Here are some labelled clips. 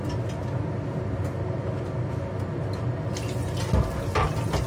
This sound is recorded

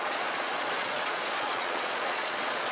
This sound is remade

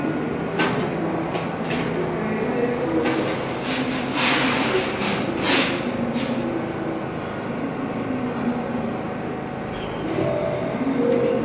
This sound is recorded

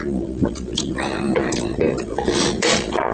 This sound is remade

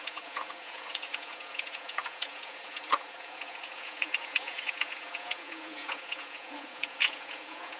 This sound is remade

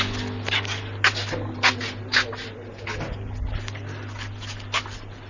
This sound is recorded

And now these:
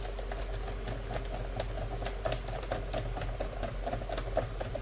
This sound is recorded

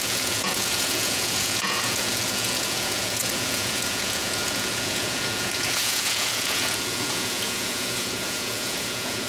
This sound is remade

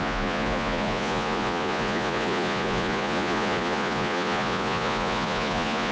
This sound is remade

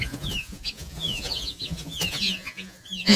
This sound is remade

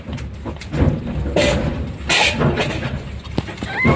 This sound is recorded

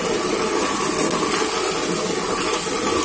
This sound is recorded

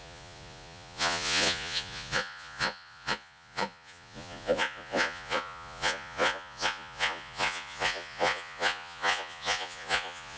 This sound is remade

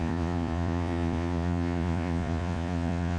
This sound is remade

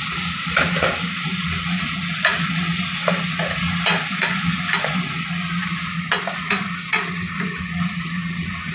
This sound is remade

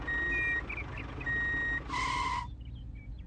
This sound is recorded